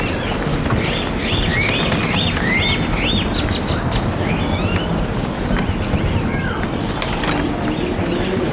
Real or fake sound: real